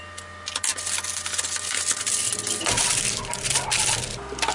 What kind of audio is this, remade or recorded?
recorded